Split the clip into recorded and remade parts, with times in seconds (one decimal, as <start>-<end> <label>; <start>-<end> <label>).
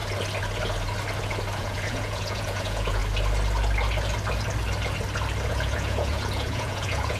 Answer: 0.0-1.6 recorded; 1.6-3.0 remade; 3.0-5.5 recorded; 5.5-7.2 remade